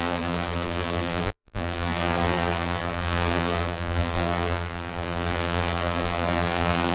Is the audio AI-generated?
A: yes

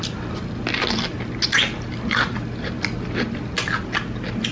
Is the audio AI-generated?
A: no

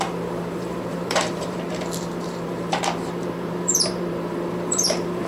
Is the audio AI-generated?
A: yes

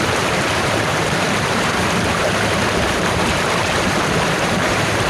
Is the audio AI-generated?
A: yes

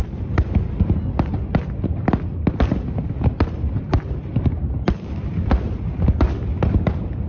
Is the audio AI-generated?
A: yes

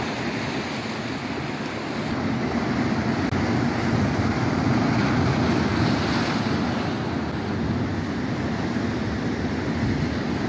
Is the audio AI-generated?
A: no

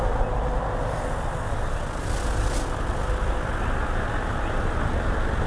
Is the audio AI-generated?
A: no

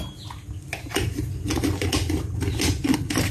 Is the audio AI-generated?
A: no